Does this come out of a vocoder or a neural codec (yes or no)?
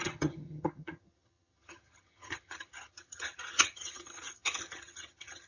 yes